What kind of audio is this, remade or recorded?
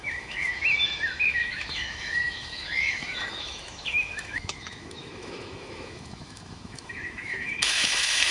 remade